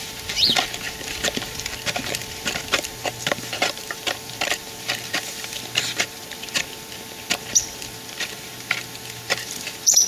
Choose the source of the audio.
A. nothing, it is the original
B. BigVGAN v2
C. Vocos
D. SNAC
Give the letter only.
B